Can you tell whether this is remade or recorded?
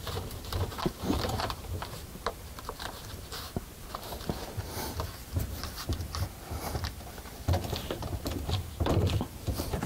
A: remade